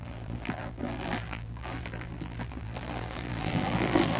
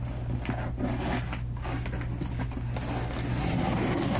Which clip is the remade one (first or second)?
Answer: first